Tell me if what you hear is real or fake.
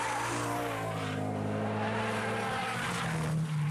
real